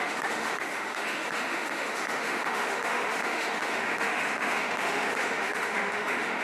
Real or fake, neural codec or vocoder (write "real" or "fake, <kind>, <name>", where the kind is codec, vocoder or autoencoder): fake, autoencoder, DAC-VAE